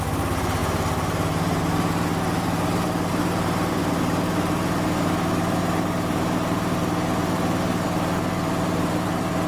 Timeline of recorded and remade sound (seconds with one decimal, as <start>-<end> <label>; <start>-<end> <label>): 0.0-9.5 remade